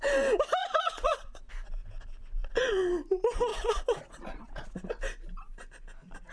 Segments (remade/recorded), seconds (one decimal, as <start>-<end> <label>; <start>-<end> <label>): 0.0-0.6 recorded; 0.6-1.5 remade; 1.5-2.4 recorded; 2.4-2.9 remade; 2.9-3.5 recorded; 3.5-4.9 remade; 4.9-6.3 recorded